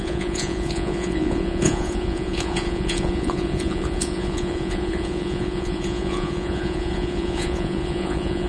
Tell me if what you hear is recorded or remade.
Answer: remade